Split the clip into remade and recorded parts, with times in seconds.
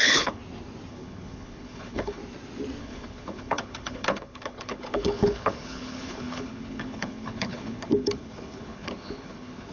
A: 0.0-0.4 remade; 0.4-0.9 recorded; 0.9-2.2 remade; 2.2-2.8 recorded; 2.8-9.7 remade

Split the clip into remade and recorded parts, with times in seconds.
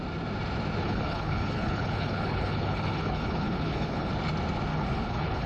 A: 0.0-0.8 recorded; 0.8-4.1 remade; 4.1-4.7 recorded; 4.7-5.5 remade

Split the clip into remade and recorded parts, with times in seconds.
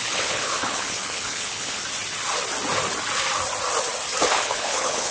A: 0.0-1.8 remade; 1.8-4.3 recorded; 4.3-5.1 remade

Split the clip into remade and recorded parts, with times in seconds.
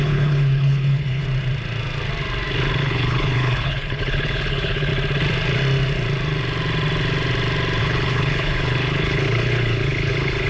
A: 0.0-1.2 remade; 1.2-2.8 recorded; 2.8-4.9 remade; 4.9-7.8 recorded; 7.8-10.5 remade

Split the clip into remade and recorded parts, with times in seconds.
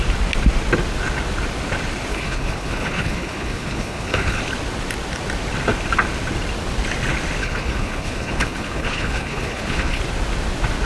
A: 0.0-2.1 recorded; 2.1-4.4 remade; 4.4-7.4 recorded; 7.4-10.0 remade; 10.0-10.9 recorded